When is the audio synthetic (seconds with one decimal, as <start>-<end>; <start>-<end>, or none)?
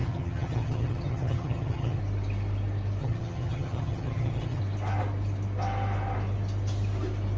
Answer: 0.0-2.0; 3.0-4.6